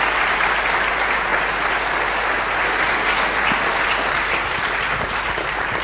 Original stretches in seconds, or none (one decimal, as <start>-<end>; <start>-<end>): 0.0-5.8